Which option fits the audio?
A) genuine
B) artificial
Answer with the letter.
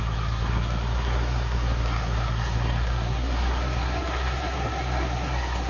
B